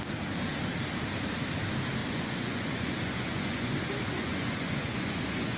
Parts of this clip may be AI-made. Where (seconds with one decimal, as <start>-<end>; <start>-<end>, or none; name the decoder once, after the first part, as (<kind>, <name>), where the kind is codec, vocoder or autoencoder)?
2.0-5.6 (vocoder, Vocos)